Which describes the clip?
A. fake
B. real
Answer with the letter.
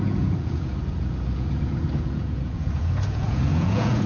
A